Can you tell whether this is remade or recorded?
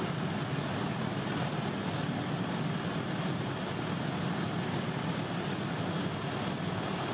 recorded